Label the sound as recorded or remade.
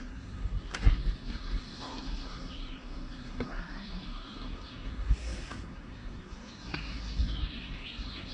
remade